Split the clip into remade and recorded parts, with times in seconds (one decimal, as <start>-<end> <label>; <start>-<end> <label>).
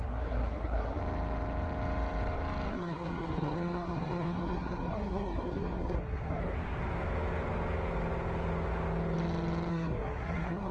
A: 0.0-1.0 remade; 1.0-2.7 recorded; 2.7-6.4 remade; 6.4-9.7 recorded; 9.7-10.7 remade